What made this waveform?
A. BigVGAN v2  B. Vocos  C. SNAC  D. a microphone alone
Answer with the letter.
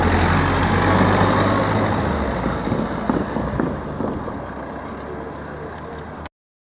D